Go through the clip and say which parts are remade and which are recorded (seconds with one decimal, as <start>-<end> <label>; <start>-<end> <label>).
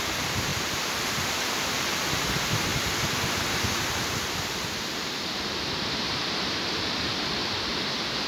0.0-2.7 remade; 2.7-4.0 recorded; 4.0-7.4 remade; 7.4-7.9 recorded; 7.9-8.3 remade